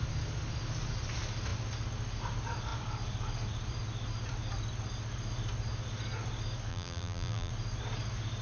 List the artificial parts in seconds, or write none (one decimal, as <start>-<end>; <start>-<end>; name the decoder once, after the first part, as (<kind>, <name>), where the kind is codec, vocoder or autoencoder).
6.7-7.5 (vocoder, BigVGAN v2)